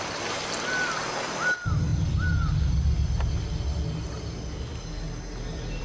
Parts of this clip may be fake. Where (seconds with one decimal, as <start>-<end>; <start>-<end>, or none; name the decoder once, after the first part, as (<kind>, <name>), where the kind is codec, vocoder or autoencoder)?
none